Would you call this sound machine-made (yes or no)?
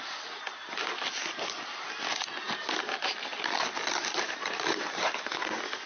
no